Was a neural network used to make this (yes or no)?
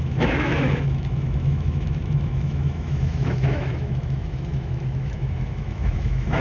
yes